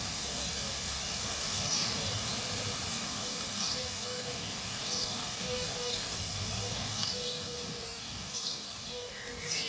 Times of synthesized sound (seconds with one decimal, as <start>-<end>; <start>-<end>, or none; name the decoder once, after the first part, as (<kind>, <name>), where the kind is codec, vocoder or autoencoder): 0.0-2.3 (codec, DAC); 2.9-9.7